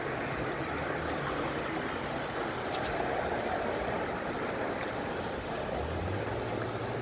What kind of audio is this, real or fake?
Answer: real